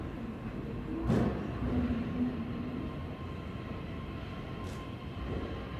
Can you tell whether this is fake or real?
real